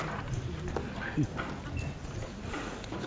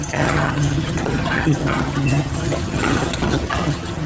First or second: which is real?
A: first